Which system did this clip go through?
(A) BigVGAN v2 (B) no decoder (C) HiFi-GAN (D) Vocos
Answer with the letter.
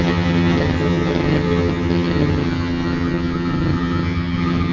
C